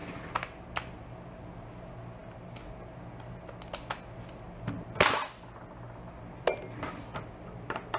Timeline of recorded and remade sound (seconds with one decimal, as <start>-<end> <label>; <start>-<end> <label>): 0.0-8.0 recorded